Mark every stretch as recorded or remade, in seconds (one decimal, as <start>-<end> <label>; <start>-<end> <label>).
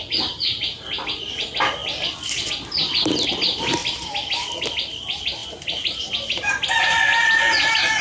0.0-8.0 recorded